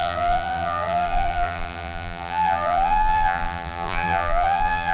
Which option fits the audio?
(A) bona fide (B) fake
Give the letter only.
B